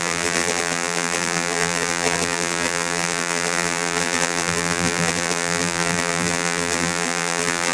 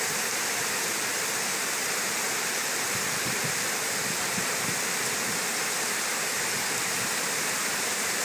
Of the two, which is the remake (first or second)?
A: first